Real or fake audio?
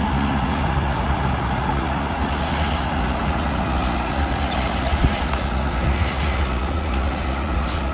fake